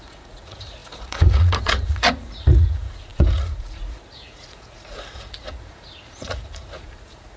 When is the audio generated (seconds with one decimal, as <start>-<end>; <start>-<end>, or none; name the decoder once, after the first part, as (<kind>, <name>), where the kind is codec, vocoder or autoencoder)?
0.0-7.4 (vocoder, Vocos)